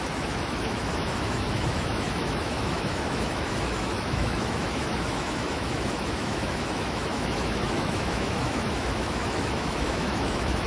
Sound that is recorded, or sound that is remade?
remade